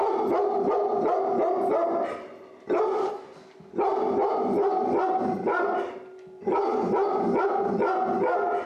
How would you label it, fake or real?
real